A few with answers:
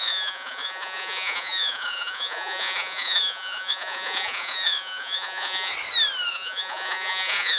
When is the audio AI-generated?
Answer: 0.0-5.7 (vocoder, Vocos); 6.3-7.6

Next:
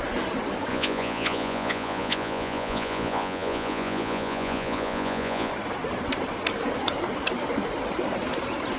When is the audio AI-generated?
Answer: 0.7-5.5 (vocoder, Vocos)

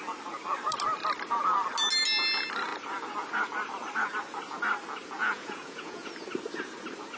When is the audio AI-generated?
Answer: 5.2-6.1 (vocoder, Vocos)

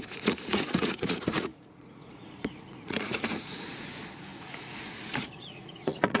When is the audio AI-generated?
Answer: 0.0-6.2 (vocoder, Vocos)

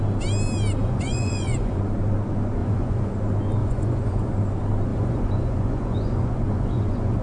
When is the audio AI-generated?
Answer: 0.8-1.8 (vocoder, Vocos); 2.6-3.1; 3.6-4.3; 4.9-7.2

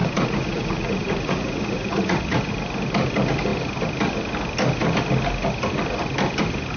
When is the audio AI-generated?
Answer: 0.0-2.5 (vocoder, Vocos)

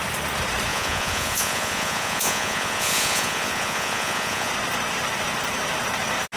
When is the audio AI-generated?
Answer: 0.7-4.5 (vocoder, Vocos)